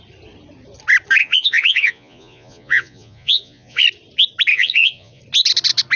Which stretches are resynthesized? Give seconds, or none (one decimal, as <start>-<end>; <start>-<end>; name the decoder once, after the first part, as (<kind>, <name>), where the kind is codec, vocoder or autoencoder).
1.2-3.8 (vocoder, Vocos); 4.5-5.2